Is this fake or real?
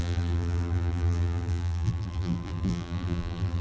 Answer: fake